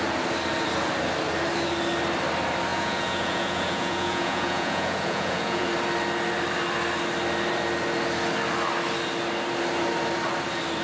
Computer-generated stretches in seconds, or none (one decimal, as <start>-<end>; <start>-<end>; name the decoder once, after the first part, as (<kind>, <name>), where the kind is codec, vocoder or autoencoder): 2.7-5.7 (vocoder, Vocos)